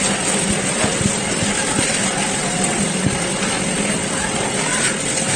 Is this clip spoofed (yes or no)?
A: no